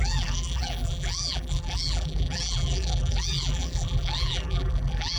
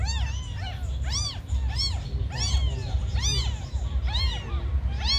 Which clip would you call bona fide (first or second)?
second